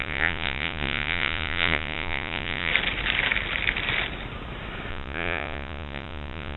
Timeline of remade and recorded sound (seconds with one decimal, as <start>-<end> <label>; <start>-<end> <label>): 0.0-2.7 remade; 2.7-4.9 recorded; 4.9-6.6 remade